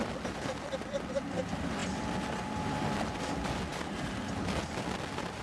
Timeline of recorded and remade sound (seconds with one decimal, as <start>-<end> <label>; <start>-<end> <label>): 0.0-5.4 recorded